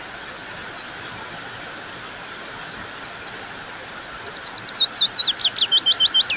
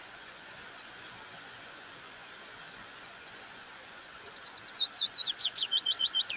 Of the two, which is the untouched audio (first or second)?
first